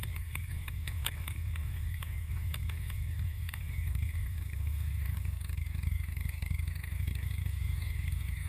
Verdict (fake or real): fake